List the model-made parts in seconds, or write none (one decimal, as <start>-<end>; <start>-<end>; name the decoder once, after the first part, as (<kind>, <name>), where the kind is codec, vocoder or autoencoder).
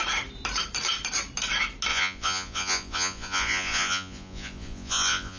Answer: 1.9-5.4 (vocoder, Vocos)